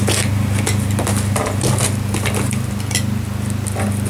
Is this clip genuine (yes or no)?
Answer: yes